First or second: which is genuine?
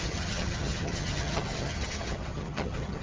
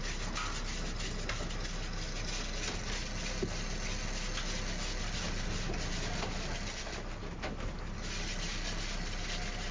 second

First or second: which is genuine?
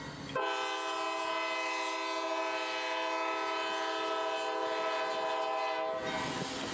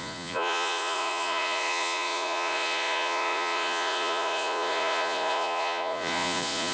first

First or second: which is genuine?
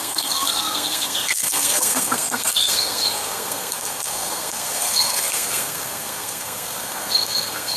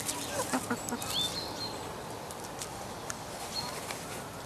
second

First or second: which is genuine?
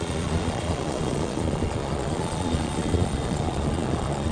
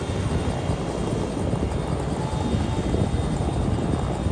second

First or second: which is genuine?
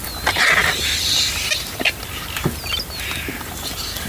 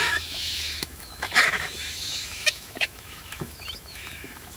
first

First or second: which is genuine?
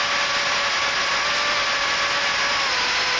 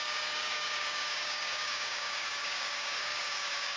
first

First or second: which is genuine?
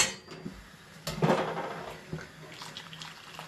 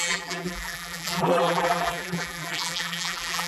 first